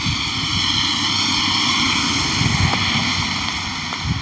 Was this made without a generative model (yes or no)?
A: yes